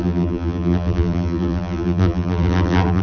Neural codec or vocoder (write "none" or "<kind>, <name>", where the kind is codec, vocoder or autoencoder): vocoder, BigVGAN v2